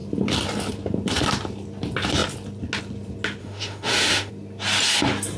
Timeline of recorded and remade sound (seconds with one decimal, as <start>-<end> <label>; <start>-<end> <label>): 0.0-3.4 recorded; 3.4-4.3 remade; 4.3-5.4 recorded